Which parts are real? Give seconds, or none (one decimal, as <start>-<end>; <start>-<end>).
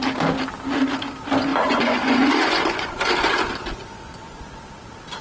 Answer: 0.0-1.5; 4.6-5.2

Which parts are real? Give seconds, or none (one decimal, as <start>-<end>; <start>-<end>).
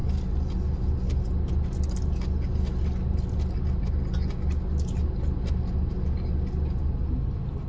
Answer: 0.0-7.7